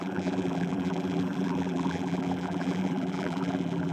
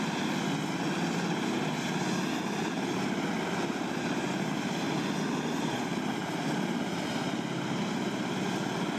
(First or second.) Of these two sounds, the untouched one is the second